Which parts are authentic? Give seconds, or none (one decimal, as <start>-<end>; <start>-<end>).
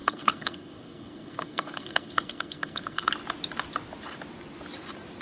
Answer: 3.1-5.2